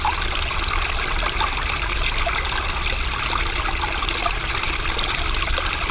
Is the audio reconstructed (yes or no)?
no